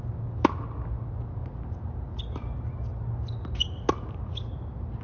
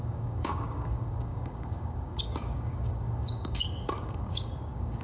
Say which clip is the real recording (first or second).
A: first